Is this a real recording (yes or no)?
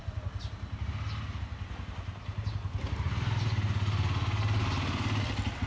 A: yes